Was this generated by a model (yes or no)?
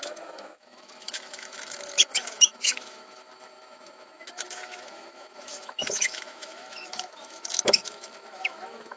yes